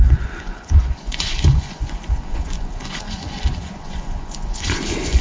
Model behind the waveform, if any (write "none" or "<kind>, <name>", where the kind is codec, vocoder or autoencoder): vocoder, Vocos